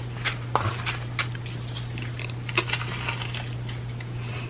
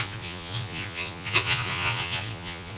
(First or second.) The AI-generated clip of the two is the second